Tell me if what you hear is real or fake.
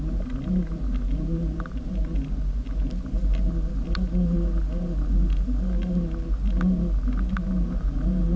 real